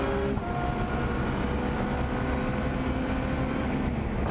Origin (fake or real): real